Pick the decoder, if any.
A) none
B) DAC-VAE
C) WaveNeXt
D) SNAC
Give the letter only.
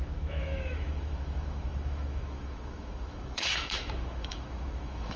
B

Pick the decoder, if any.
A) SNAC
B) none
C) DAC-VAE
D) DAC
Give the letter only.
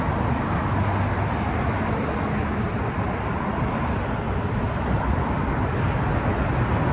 B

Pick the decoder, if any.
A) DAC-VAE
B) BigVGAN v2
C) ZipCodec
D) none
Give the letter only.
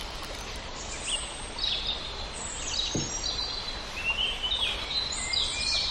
D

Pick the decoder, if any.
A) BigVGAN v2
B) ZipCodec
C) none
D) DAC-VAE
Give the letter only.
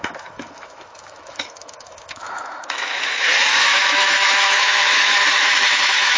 D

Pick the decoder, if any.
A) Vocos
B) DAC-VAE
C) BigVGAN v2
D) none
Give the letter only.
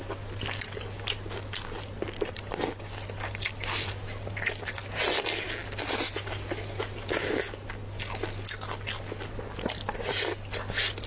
D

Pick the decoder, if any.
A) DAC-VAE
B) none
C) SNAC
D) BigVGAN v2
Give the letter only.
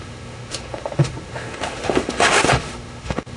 A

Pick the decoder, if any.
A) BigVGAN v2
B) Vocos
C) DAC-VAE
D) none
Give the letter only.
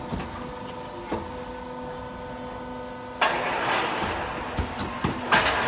D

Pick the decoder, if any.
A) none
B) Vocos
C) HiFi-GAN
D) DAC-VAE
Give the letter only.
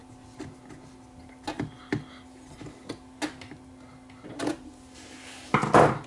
A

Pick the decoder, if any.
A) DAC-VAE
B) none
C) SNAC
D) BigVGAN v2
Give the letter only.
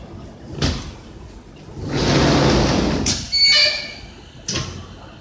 B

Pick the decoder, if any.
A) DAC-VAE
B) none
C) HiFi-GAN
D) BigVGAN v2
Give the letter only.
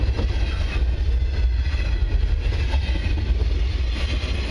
B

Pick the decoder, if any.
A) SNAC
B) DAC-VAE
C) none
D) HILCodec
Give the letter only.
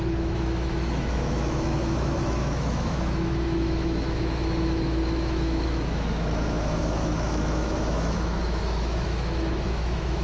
B